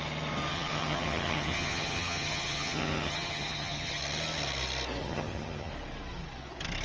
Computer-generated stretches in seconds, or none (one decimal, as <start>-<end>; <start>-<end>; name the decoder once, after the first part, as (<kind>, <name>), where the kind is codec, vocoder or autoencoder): 0.5-4.0 (vocoder, HiFi-GAN); 5.0-5.7